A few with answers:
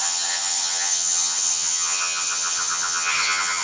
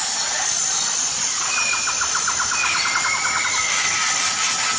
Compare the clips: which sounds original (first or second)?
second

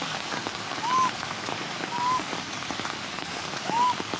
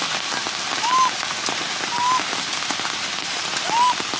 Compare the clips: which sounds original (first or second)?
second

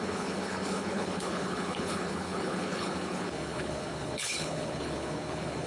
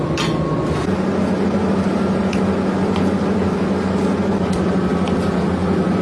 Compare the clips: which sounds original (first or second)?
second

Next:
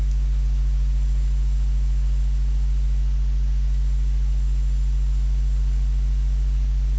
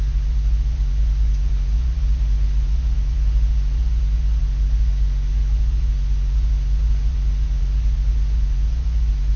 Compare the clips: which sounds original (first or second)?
first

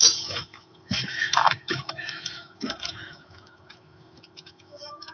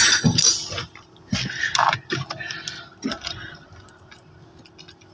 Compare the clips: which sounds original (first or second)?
second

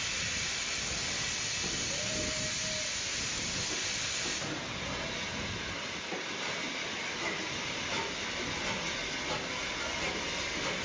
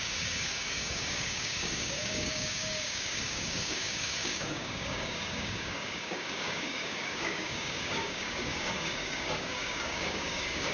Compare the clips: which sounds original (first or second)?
first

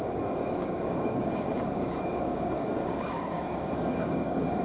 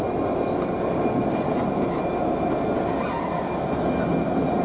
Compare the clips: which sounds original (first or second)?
second